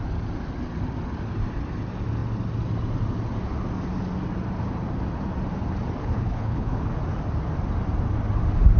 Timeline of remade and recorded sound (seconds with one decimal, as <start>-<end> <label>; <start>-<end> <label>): 0.0-6.0 recorded; 6.0-6.8 remade; 6.8-8.8 recorded